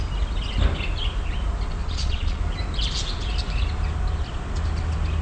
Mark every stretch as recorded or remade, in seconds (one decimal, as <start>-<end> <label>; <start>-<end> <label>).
0.0-1.8 recorded; 1.8-2.4 remade; 2.4-5.2 recorded